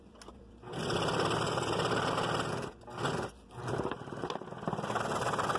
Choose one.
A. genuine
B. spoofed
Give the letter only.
A